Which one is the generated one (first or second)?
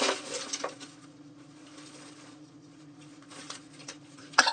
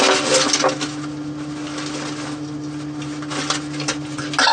first